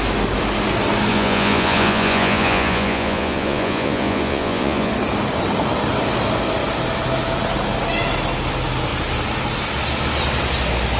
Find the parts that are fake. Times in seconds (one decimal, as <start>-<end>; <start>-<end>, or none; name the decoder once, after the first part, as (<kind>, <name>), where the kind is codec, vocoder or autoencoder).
1.1-4.9 (vocoder, Vocos)